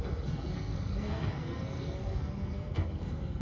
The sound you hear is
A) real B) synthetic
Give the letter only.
B